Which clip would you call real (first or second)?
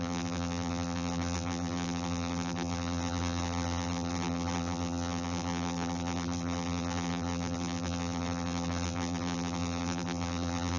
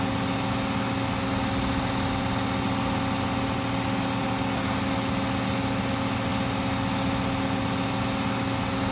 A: second